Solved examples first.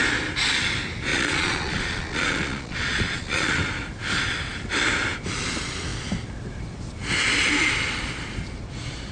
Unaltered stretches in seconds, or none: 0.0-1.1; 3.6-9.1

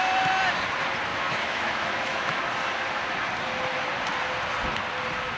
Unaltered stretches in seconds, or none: 0.0-1.1; 2.4-5.4

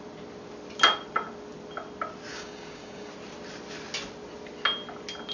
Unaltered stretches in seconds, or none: 0.0-2.3; 3.1-5.3

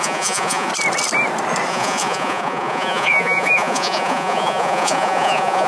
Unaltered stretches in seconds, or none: 0.7-1.7

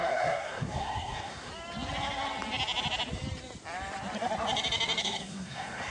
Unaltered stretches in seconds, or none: 1.5-5.0